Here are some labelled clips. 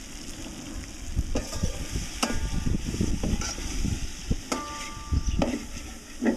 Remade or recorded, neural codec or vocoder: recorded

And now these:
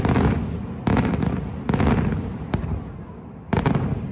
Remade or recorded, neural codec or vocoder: recorded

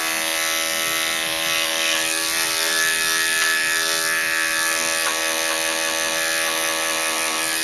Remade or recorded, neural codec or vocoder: recorded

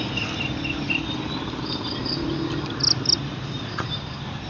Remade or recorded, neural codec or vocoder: recorded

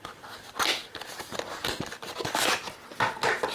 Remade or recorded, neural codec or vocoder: recorded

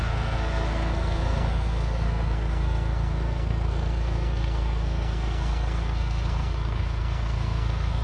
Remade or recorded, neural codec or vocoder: remade, codec, SNAC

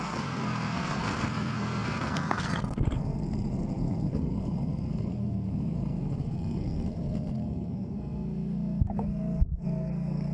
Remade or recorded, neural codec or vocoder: remade, codec, SNAC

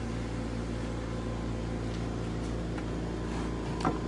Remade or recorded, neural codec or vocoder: recorded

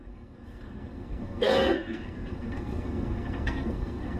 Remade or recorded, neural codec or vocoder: remade, codec, SNAC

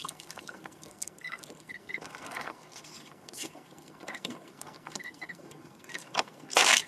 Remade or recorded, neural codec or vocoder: remade, codec, SNAC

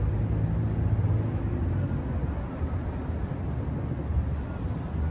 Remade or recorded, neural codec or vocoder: recorded